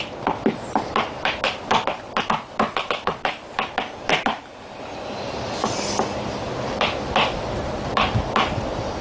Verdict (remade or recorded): recorded